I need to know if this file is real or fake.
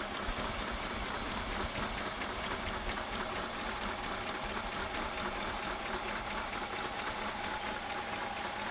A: real